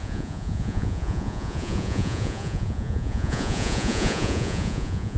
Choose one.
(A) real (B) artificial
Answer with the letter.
B